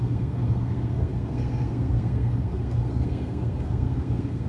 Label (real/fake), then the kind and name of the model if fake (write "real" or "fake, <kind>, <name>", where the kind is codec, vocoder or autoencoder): fake, codec, SNAC